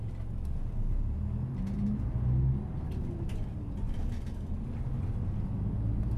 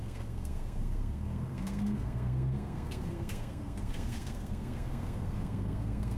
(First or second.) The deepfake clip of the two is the second